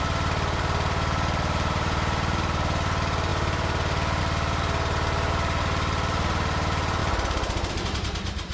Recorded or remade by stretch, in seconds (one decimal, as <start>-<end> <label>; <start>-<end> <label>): 0.0-7.0 remade; 7.0-7.7 recorded; 7.7-8.5 remade